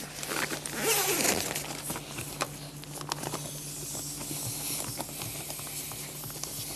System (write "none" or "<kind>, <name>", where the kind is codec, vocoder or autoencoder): none